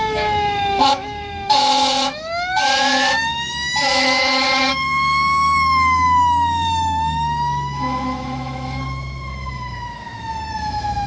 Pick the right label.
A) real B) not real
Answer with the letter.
B